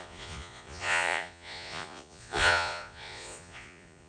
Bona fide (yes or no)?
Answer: no